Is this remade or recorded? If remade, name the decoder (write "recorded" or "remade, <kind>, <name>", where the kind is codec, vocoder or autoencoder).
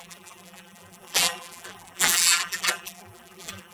remade, vocoder, BigVGAN v2